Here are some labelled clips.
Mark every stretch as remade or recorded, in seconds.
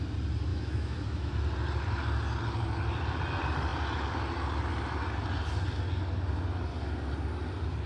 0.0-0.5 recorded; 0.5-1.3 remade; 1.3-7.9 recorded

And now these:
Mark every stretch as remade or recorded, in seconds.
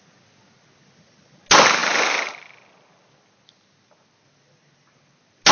0.0-5.5 recorded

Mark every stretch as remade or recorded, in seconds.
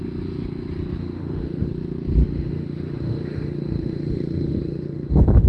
0.0-1.0 recorded; 1.0-1.7 remade; 1.7-2.2 recorded; 2.2-5.5 remade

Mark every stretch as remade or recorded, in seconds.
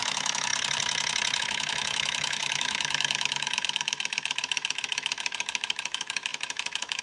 0.0-0.5 remade; 0.5-1.4 recorded; 1.4-7.0 remade